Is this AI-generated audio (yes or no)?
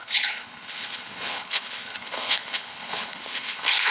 yes